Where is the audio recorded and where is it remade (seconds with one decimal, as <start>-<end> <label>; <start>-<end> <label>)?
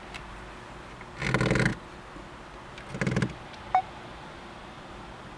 0.0-5.4 recorded